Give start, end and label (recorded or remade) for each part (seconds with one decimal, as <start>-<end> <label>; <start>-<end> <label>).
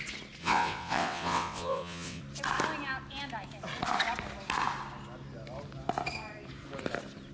0.0-0.4 recorded; 0.4-2.2 remade; 2.2-7.3 recorded